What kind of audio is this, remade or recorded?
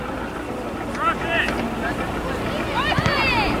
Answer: recorded